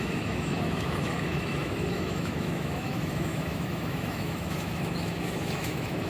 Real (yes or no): no